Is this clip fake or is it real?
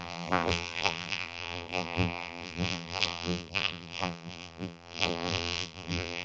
fake